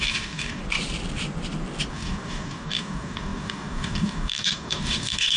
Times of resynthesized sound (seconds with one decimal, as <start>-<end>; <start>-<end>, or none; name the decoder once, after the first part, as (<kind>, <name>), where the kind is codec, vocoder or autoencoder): 0.0-0.6 (codec, DAC); 1.9-5.4